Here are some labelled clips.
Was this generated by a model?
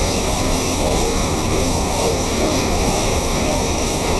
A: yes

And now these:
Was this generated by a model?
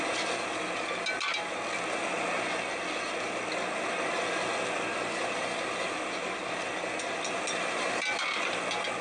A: no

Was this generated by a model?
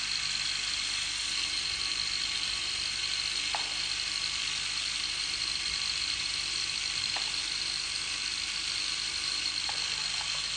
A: no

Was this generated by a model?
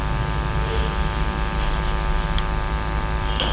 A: no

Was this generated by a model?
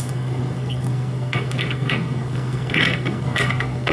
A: yes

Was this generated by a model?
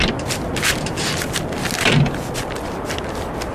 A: no